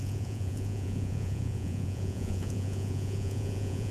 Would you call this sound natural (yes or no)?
no